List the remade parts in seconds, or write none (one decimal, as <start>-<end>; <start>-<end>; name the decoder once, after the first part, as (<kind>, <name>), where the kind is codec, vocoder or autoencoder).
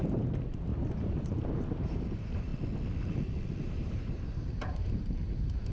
0.0-0.7 (vocoder, BigVGAN v2); 1.2-2.5; 3.6-5.7